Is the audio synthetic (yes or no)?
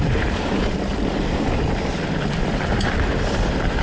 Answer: yes